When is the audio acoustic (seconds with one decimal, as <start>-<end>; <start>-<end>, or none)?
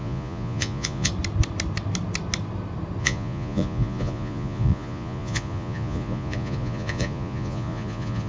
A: 1.1-3.0